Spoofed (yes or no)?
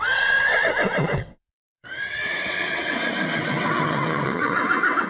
yes